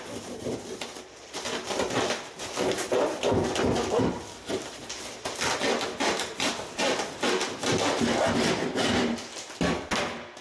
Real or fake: fake